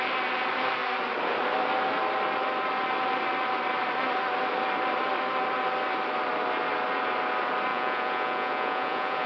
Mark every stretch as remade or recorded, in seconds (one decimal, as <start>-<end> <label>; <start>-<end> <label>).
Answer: 0.0-7.7 recorded; 7.7-9.3 remade